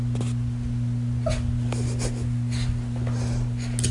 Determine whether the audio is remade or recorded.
recorded